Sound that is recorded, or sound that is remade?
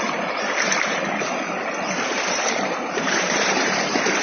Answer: remade